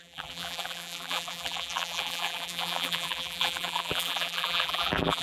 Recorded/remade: remade